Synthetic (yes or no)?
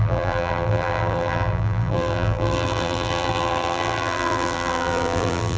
yes